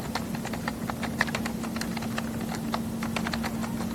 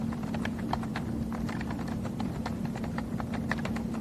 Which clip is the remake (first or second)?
second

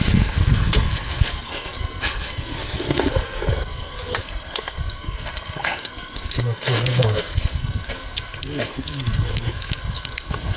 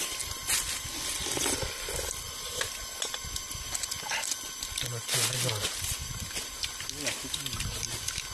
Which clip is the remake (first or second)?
first